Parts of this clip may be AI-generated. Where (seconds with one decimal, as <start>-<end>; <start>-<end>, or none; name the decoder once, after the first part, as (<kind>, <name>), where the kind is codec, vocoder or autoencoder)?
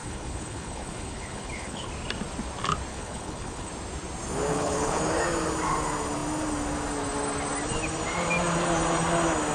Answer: 0.0-1.9 (codec, HILCodec); 2.9-3.7; 4.5-5.0